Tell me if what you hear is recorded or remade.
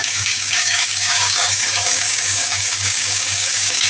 remade